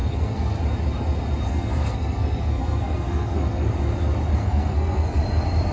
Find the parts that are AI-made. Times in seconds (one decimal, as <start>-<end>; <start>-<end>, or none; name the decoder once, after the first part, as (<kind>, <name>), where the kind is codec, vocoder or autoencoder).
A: 0.0-0.6 (codec, SNAC); 1.5-3.7; 4.3-5.2